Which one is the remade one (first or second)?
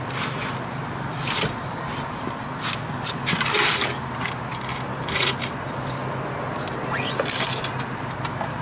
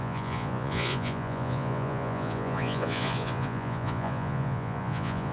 second